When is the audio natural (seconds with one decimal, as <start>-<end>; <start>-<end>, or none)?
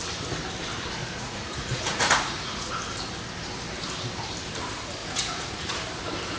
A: 0.0-1.0; 2.7-5.0; 5.8-6.4